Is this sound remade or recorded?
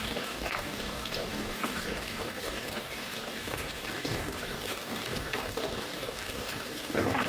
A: remade